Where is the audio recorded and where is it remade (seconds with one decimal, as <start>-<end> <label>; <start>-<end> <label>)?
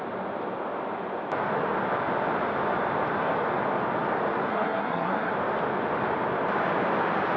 0.0-4.5 recorded; 4.5-5.3 remade; 5.3-7.4 recorded